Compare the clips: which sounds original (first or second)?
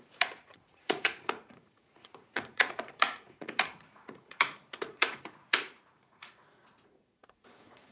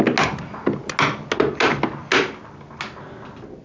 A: second